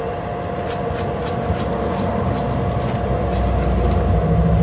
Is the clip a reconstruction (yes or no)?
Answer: no